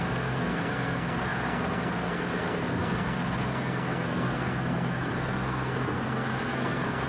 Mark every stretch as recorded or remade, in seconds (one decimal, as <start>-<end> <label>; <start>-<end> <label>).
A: 0.0-7.1 remade